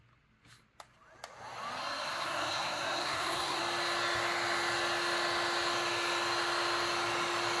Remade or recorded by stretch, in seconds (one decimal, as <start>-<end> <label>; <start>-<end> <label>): 0.0-1.8 recorded; 1.8-3.6 remade; 3.6-7.6 recorded